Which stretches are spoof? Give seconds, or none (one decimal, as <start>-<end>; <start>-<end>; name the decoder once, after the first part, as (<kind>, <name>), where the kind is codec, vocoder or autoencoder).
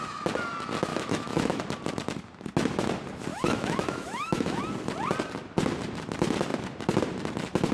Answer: 0.9-1.6 (autoencoder, DAC-VAE); 3.3-4.6